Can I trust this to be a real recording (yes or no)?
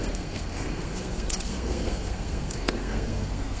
no